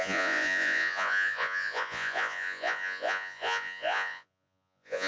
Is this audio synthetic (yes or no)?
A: yes